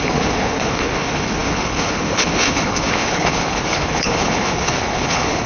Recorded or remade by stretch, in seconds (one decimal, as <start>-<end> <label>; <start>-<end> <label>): 0.0-5.5 remade